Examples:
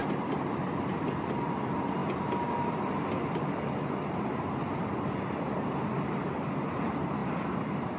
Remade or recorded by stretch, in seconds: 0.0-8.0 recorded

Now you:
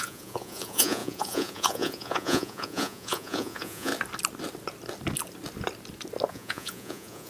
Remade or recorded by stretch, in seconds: 0.0-3.9 remade; 3.9-6.3 recorded; 6.3-7.3 remade

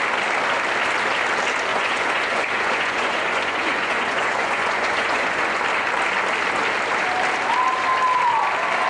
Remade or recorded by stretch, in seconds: 0.0-1.7 recorded; 1.7-5.6 remade; 5.6-8.9 recorded

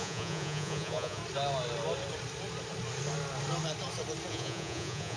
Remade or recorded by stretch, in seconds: 0.0-1.2 remade; 1.2-4.3 recorded; 4.3-5.2 remade

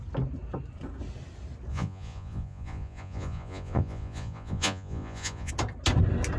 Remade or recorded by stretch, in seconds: 0.0-1.7 recorded; 1.7-5.5 remade; 5.5-6.4 recorded

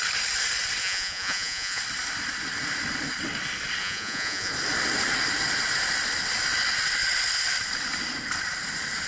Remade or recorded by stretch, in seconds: 0.0-0.8 recorded; 0.8-1.8 remade; 1.8-3.8 recorded; 3.8-4.5 remade; 4.5-9.1 recorded

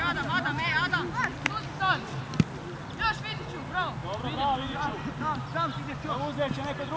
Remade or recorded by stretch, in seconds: 0.0-7.0 recorded

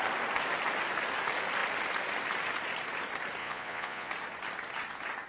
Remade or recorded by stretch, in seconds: 0.0-3.4 recorded; 3.4-4.1 remade; 4.1-5.3 recorded